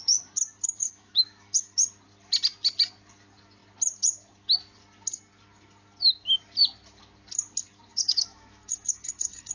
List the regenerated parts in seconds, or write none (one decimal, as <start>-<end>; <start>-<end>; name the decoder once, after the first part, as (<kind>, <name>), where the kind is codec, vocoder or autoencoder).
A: 0.8-1.9 (autoencoder, DAC-VAE); 7.9-9.5